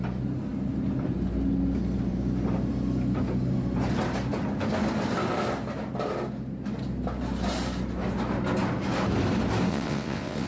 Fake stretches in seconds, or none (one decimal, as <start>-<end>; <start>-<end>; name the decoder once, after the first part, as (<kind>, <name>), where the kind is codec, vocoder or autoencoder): 9.7-10.5 (vocoder, WaveNeXt)